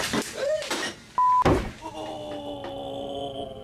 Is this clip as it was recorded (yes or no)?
yes